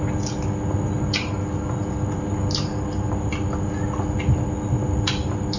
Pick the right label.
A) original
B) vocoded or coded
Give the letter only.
A